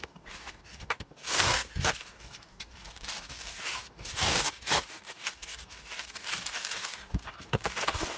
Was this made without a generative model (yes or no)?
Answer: no